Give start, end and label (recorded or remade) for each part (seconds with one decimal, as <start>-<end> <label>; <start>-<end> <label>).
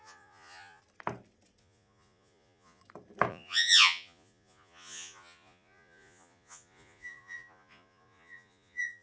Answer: 0.0-0.8 remade; 0.8-1.6 recorded; 1.6-2.8 remade; 2.8-3.3 recorded; 3.3-9.0 remade